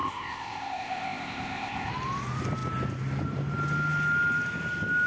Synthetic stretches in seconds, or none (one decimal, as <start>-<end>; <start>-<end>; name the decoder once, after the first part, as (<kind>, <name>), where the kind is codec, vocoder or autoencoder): 0.0-1.9 (codec, ZipCodec)